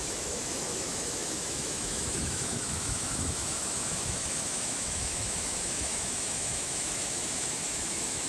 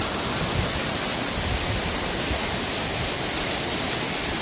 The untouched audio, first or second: second